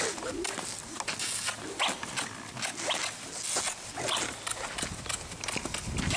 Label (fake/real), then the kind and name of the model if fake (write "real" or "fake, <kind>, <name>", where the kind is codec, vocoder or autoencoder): real